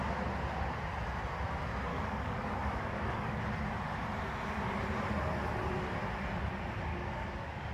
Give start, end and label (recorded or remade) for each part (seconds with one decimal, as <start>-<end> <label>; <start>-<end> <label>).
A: 0.0-1.9 recorded; 1.9-3.4 remade; 3.4-6.9 recorded; 6.9-7.7 remade